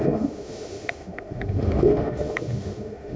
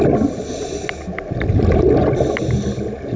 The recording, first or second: second